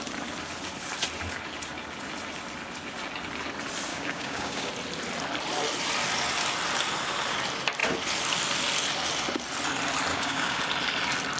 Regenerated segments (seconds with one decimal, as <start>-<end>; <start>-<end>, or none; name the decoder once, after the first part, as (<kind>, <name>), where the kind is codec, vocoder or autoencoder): 3.9-4.7 (codec, DAC); 10.1-10.6